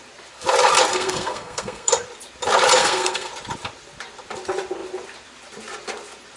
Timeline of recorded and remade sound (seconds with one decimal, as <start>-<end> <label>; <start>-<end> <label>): 0.0-0.9 recorded; 0.9-1.9 remade; 1.9-2.8 recorded; 2.8-3.3 remade; 3.3-6.4 recorded